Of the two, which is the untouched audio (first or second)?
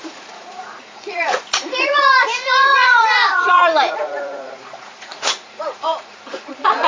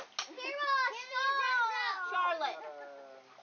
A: second